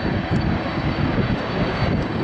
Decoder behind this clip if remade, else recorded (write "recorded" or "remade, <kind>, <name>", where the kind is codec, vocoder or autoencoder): remade, codec, DAC